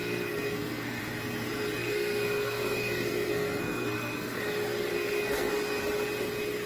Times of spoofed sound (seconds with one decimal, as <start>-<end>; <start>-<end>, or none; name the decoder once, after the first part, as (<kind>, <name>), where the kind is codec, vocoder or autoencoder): 0.0-1.0 (codec, SNAC); 1.8-4.4; 4.9-5.5